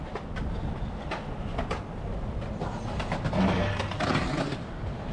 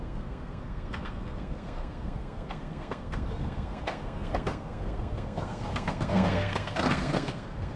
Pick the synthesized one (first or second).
second